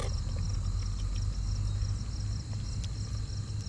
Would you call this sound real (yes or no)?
yes